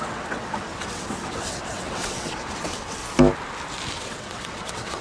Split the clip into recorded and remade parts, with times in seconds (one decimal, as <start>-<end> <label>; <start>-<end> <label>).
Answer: 0.0-3.0 remade; 3.0-4.0 recorded; 4.0-5.0 remade